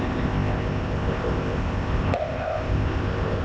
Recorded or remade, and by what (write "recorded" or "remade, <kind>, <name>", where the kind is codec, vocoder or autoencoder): remade, codec, ZipCodec